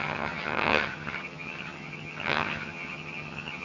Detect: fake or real fake